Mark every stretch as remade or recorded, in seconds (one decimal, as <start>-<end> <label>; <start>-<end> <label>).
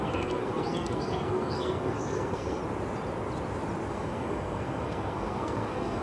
0.0-2.6 remade; 2.6-3.9 recorded; 3.9-6.0 remade